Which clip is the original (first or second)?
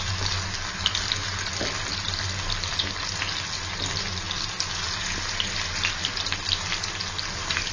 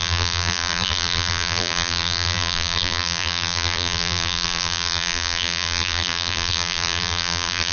first